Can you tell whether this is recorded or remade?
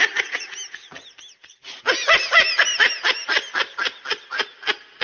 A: recorded